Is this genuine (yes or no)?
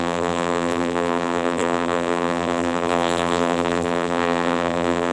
no